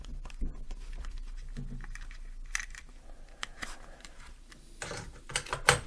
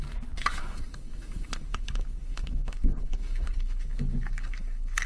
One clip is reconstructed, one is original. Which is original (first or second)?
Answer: first